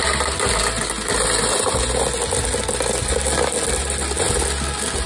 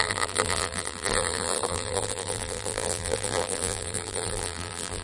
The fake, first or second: second